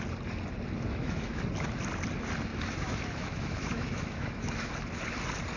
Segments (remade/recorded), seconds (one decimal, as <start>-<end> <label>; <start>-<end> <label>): 0.0-0.9 recorded; 0.9-1.4 remade; 1.4-2.5 recorded; 2.5-4.7 remade; 4.7-5.6 recorded